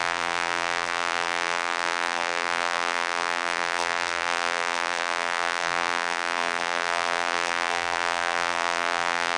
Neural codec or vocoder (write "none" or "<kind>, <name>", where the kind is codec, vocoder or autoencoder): vocoder, BigVGAN v2